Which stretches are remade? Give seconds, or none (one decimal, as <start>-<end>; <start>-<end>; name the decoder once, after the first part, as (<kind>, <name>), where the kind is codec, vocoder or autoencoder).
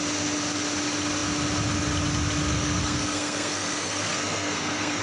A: 2.5-5.0 (codec, SNAC)